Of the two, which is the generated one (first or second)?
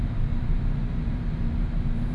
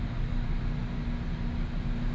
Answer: first